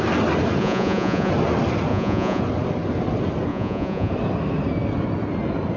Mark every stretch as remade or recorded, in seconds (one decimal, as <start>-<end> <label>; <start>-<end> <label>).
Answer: 0.0-0.6 recorded; 0.6-1.3 remade; 1.3-1.9 recorded; 1.9-2.4 remade; 2.4-3.5 recorded; 3.5-4.1 remade; 4.1-5.8 recorded

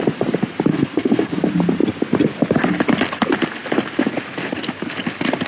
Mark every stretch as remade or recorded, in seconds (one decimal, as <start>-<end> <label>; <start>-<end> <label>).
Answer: 0.0-0.7 recorded; 0.7-1.4 remade; 1.4-5.5 recorded

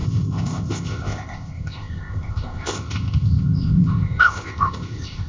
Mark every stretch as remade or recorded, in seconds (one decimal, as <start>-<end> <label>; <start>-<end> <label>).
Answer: 0.0-5.3 remade

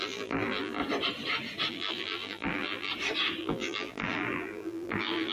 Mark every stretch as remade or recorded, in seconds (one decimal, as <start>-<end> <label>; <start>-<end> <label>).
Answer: 0.0-0.8 remade; 0.8-1.7 recorded; 1.7-2.9 remade; 2.9-3.4 recorded; 3.4-5.3 remade

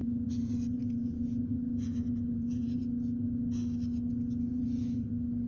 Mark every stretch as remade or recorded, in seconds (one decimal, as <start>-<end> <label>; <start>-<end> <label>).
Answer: 0.0-2.8 remade; 2.8-4.5 recorded; 4.5-5.1 remade; 5.1-5.5 recorded